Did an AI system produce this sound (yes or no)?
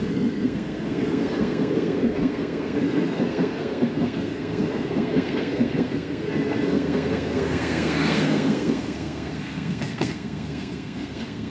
yes